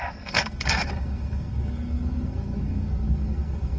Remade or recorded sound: remade